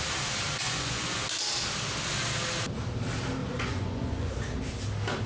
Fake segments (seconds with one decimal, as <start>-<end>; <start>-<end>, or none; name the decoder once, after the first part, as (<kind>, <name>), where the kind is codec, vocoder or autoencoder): 0.6-1.2 (vocoder, Vocos); 3.4-4.3